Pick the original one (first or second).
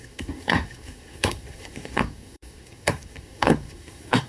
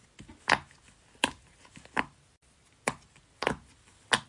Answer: second